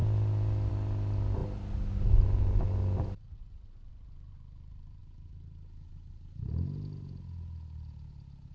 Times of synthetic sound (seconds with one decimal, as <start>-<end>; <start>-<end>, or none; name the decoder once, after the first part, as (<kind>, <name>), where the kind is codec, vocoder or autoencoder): none